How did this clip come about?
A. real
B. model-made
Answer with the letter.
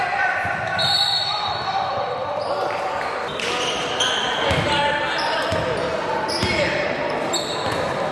B